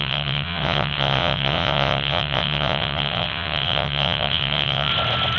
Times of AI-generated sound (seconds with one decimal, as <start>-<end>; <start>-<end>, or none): 0.0-4.9